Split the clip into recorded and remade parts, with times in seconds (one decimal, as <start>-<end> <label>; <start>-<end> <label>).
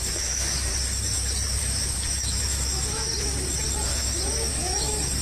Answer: 0.0-0.7 remade; 0.7-1.6 recorded; 1.6-3.1 remade; 3.1-3.9 recorded; 3.9-5.2 remade